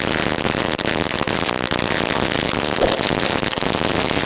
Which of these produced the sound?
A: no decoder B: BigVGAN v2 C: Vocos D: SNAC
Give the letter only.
A